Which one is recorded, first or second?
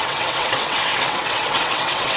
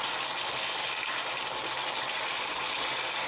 second